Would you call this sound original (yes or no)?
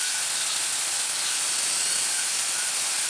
yes